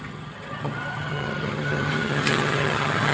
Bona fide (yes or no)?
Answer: no